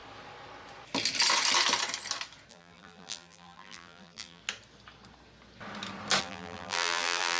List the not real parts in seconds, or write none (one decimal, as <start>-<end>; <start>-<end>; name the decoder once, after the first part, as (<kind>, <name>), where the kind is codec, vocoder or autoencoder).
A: 2.5-4.4 (vocoder, BigVGAN v2); 6.2-7.4